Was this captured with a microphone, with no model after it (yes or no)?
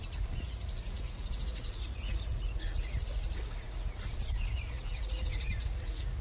no